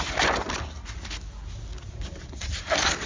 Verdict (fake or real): real